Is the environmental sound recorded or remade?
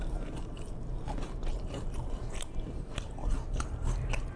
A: remade